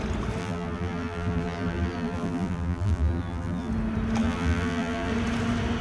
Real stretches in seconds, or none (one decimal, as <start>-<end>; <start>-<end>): 0.0-0.4; 3.7-4.2; 5.1-5.8

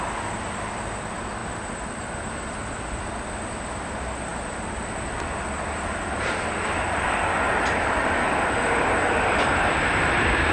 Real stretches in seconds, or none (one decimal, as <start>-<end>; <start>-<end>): 0.0-1.4; 3.0-10.5

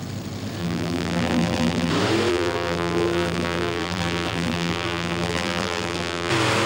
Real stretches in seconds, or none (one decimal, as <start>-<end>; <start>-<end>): 0.0-0.6; 1.9-2.3; 6.3-6.7